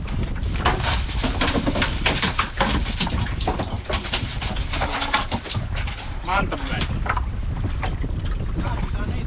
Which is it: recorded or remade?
recorded